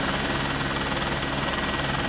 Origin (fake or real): real